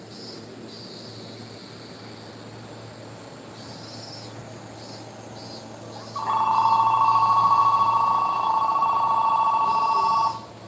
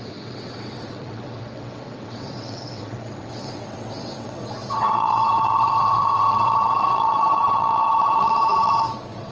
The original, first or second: first